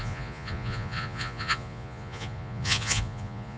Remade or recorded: remade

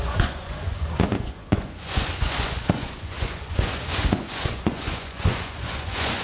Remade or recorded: remade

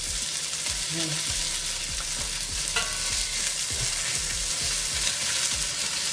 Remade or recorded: recorded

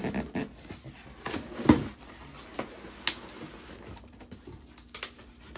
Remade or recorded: recorded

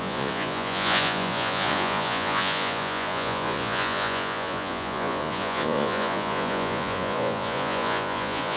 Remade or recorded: remade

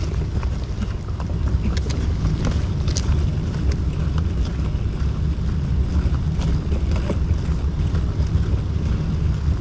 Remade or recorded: recorded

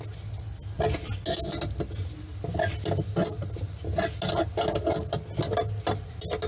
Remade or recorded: recorded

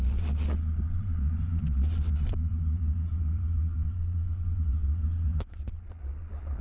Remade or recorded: remade